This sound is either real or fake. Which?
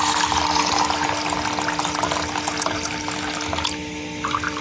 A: real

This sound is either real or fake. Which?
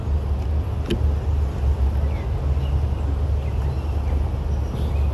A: real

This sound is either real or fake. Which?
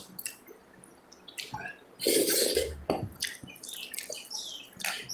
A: real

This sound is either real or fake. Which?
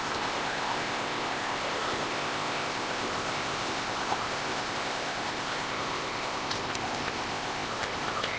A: fake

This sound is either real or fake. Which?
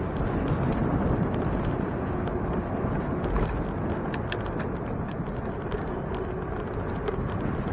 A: real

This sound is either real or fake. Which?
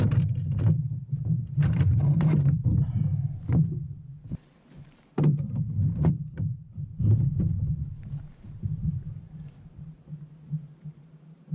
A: fake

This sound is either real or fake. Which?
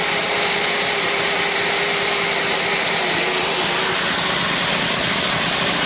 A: real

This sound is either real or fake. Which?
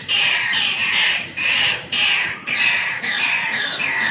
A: fake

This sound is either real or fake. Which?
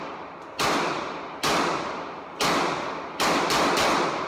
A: real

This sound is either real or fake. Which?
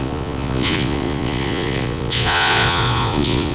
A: fake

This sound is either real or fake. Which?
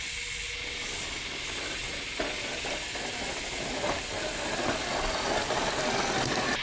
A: real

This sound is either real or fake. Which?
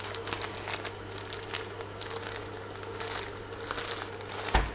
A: real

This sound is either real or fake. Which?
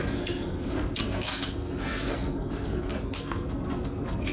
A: fake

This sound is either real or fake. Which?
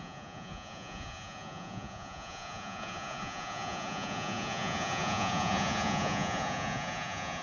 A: fake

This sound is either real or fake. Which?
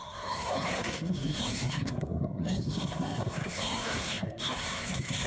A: fake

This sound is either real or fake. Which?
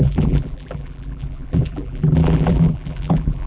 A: fake